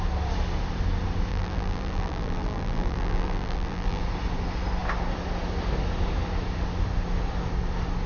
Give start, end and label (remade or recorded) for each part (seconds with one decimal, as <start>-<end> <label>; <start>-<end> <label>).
0.0-1.3 recorded; 1.3-4.0 remade; 4.0-8.1 recorded